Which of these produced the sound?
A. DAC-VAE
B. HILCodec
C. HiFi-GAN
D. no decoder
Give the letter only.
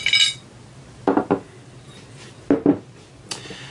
D